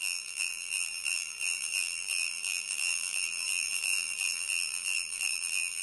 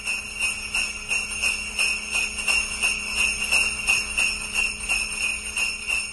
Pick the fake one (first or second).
first